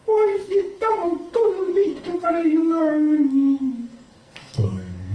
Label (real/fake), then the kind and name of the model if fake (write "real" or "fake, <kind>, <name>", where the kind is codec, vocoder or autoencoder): fake, codec, SNAC